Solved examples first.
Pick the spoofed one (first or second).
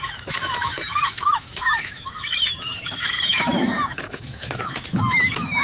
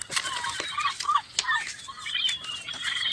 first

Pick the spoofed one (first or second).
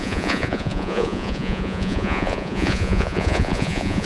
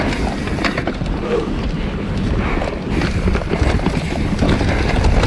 first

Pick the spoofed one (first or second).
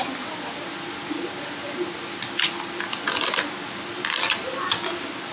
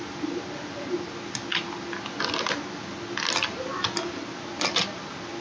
first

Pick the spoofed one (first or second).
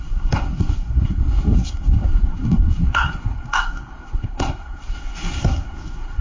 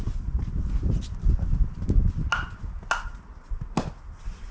first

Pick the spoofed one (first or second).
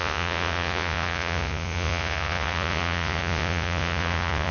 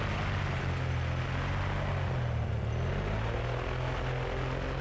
first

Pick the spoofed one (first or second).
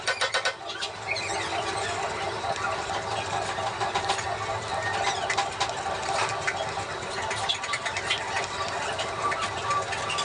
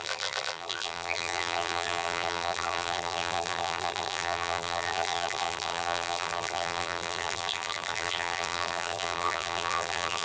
second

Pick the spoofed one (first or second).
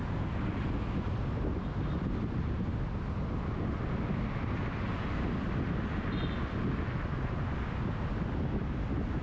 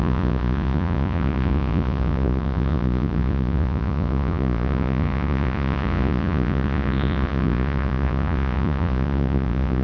second